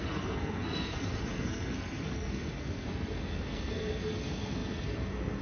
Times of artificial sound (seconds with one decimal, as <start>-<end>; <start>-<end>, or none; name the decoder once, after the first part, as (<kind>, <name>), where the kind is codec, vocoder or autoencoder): 0.0-5.4 (codec, SNAC)

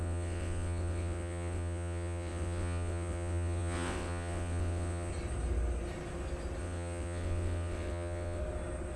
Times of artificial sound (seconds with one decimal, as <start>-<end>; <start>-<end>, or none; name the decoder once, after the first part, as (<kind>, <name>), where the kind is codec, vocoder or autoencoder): 0.0-5.1 (vocoder, WaveNeXt); 6.6-8.4

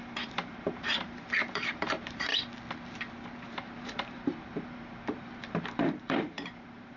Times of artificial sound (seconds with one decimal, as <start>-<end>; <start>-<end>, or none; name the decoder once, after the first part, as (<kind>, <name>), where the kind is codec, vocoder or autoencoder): 0.0-2.3 (vocoder, BigVGAN v2); 3.4-7.0

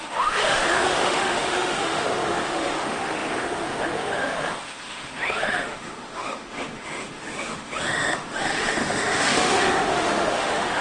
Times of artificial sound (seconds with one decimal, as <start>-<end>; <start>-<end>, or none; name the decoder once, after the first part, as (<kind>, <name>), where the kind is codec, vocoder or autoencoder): 0.0-10.8 (autoencoder, DAC-VAE)